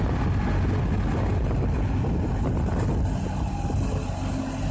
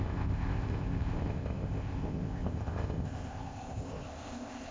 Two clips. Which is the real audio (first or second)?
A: first